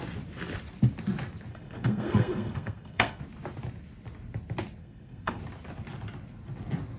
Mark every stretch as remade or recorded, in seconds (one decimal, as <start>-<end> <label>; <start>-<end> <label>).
0.0-1.5 recorded; 1.5-3.2 remade; 3.2-4.8 recorded; 4.8-5.4 remade; 5.4-7.0 recorded